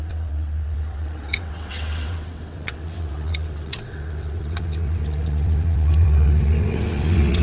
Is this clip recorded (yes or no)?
no